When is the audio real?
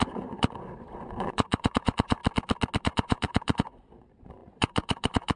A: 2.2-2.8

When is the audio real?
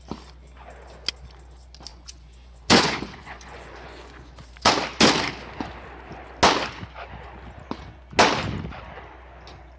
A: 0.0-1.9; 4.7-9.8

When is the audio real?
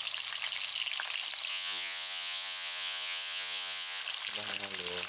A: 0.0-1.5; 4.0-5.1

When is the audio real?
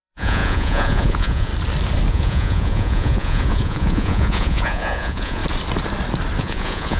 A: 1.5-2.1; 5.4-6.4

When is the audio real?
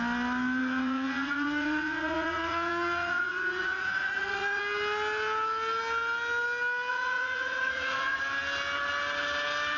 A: 0.0-0.6; 4.6-6.9; 8.2-9.8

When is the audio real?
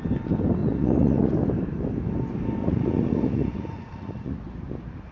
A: 0.0-0.6; 1.3-2.6; 4.4-5.1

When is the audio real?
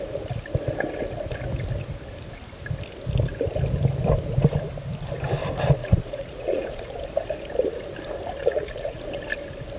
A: 0.0-5.8; 6.9-8.4; 9.1-9.8